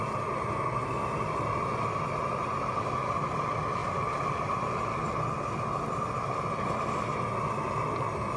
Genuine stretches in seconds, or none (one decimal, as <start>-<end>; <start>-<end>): 0.0-8.4